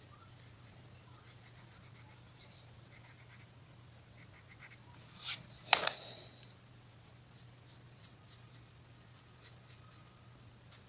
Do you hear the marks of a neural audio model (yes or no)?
no